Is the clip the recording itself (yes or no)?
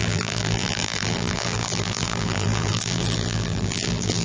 no